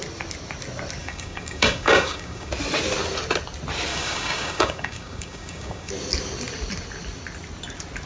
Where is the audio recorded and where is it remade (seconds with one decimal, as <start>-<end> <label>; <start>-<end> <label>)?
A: 0.0-1.0 recorded; 1.0-2.5 remade; 2.5-3.9 recorded; 3.9-5.9 remade; 5.9-8.1 recorded